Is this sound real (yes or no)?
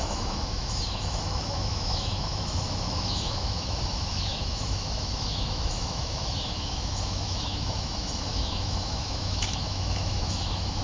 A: no